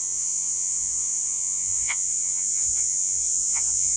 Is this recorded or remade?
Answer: remade